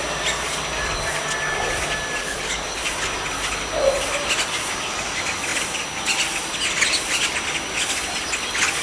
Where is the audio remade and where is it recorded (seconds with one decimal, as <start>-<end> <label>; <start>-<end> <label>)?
0.0-2.2 recorded; 2.2-2.8 remade; 2.8-8.8 recorded